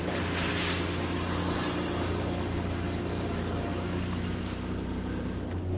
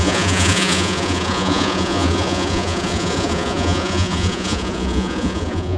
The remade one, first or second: second